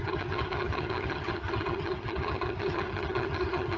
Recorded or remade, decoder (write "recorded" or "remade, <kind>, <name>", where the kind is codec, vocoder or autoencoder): remade, vocoder, HiFi-GAN